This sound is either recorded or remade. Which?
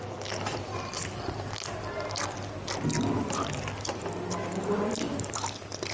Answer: recorded